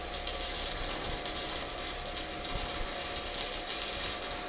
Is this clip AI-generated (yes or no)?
no